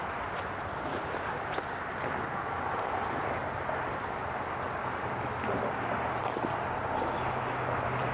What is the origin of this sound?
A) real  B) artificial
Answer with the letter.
B